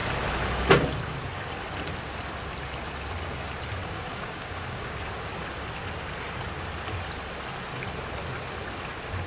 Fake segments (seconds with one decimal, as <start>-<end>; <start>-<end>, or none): 3.8-5.1